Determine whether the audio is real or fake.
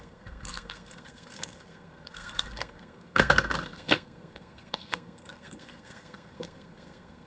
fake